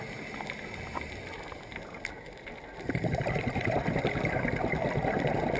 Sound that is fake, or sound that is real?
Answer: real